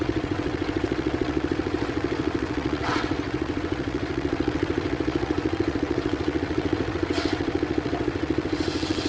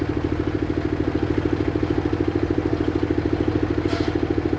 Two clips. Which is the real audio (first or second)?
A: second